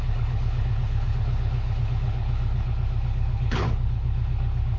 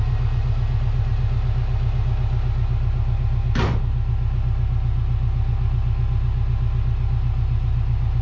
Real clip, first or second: second